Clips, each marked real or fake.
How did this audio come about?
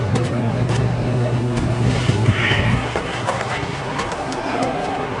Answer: fake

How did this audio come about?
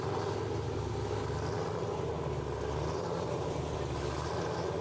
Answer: real